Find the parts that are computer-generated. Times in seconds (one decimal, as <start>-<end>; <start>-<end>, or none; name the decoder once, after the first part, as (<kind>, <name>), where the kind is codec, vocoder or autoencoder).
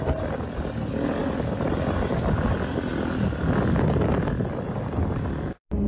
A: none